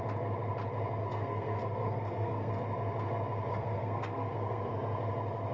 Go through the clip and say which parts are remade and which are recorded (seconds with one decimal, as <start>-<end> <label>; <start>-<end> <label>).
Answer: 0.0-1.0 recorded; 1.0-2.5 remade; 2.5-3.5 recorded; 3.5-4.7 remade; 4.7-5.5 recorded